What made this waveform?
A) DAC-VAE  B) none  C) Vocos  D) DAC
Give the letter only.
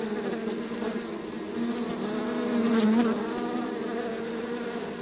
B